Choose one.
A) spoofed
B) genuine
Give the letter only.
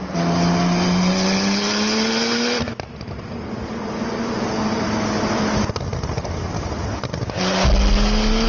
B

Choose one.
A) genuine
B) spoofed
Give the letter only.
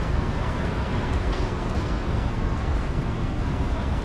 B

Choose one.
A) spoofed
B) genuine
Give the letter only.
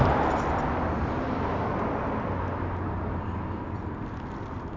B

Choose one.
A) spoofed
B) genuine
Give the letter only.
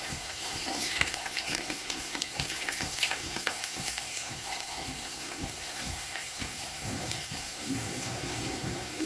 A